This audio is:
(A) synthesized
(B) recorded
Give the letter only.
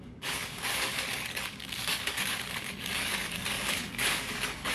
A